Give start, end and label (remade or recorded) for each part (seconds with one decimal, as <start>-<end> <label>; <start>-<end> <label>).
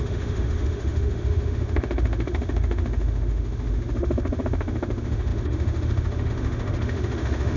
0.0-7.6 remade